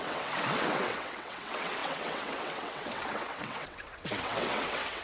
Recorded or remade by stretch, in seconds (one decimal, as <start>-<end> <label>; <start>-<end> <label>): 0.0-5.0 remade